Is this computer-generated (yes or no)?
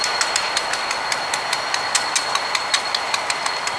no